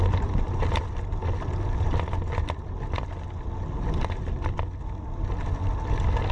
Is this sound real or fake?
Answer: real